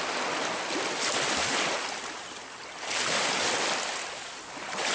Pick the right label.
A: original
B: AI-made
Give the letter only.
A